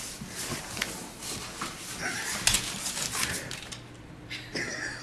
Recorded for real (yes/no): yes